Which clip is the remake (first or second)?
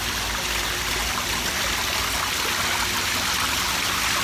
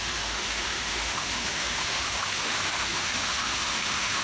second